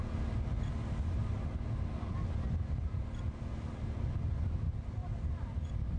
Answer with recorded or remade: recorded